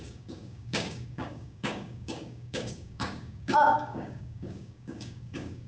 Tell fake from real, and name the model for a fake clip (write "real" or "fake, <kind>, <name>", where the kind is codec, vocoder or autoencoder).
fake, codec, DAC